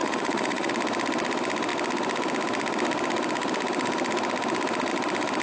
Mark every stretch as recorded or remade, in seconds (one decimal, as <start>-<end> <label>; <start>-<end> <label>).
0.0-0.7 remade; 0.7-5.4 recorded